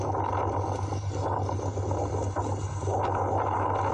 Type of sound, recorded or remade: recorded